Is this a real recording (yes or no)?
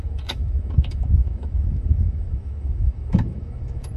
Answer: no